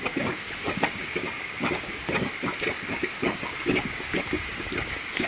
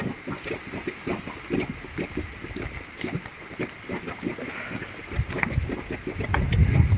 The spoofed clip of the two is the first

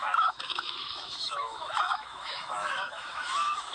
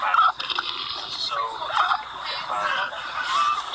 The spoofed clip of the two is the first